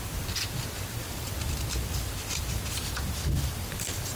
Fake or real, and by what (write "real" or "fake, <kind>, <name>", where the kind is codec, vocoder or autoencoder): fake, vocoder, BigVGAN v2